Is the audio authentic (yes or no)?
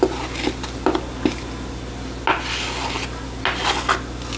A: yes